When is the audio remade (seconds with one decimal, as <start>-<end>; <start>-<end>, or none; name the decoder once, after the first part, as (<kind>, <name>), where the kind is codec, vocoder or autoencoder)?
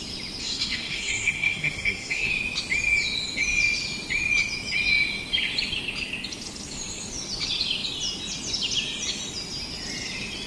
0.4-2.3 (codec, SNAC)